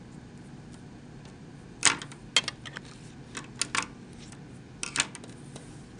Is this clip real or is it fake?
real